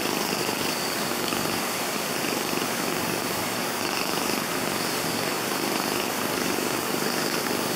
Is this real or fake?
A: fake